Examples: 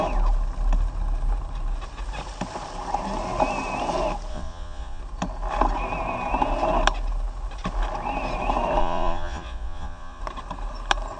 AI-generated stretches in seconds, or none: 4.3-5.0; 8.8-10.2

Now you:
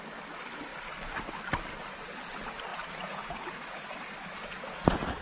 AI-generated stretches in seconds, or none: 2.7-3.9

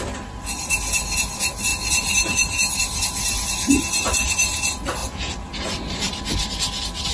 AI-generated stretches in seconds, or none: 5.0-6.1

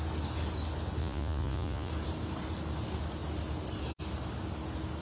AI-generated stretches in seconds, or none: 1.0-1.9

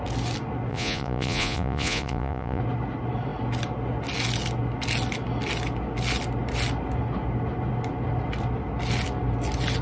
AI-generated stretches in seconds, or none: 0.7-2.6

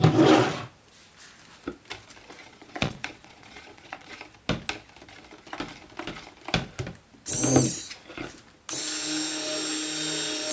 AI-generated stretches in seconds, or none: 2.4-4.2

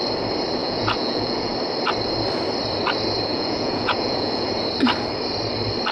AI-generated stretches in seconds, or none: 0.6-1.5; 3.3-4.5